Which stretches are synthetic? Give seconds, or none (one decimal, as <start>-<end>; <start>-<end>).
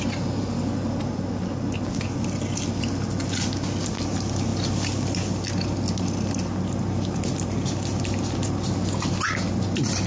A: none